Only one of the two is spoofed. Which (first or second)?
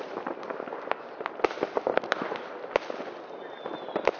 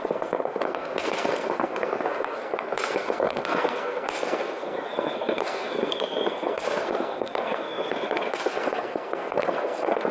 second